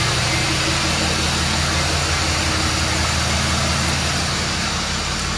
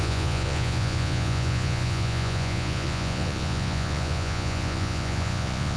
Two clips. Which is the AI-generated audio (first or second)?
second